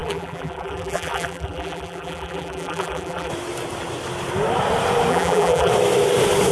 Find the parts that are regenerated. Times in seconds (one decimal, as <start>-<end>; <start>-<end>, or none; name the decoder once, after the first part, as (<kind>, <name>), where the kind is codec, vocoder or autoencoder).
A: 0.0-3.3 (vocoder, BigVGAN v2); 5.1-5.7